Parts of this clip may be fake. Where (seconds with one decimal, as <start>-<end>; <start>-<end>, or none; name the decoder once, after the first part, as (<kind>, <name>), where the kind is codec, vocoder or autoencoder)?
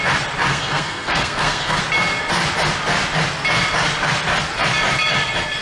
0.5-1.8 (codec, SNAC)